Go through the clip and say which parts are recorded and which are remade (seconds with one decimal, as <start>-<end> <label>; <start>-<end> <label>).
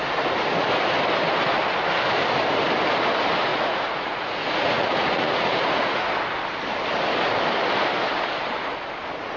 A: 0.0-3.5 recorded; 3.5-6.1 remade; 6.1-9.4 recorded